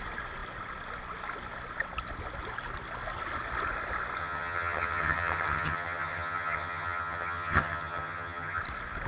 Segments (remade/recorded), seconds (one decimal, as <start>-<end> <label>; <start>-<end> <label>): 0.0-4.2 recorded; 4.2-8.6 remade; 8.6-9.1 recorded